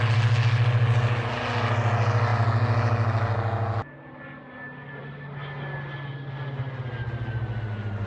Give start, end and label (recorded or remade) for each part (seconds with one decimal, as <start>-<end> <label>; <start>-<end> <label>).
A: 0.0-8.1 recorded